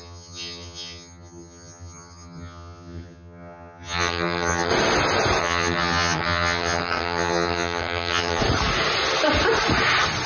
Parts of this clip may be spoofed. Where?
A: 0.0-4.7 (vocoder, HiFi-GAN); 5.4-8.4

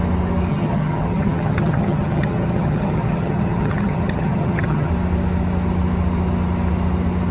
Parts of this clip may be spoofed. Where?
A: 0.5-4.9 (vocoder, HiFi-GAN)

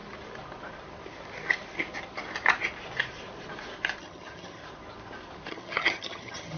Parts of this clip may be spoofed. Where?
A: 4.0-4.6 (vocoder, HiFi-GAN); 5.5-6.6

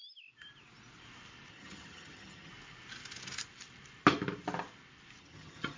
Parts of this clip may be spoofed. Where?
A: 1.5-2.5 (vocoder, HiFi-GAN); 5.2-5.8